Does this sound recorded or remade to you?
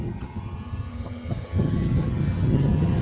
remade